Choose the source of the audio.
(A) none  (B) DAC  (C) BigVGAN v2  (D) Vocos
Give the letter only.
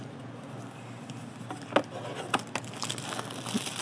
A